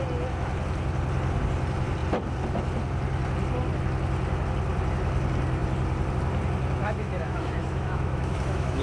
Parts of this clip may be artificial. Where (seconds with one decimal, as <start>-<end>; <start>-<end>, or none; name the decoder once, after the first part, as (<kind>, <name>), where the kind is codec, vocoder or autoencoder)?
6.8-8.8 (autoencoder, DAC-VAE)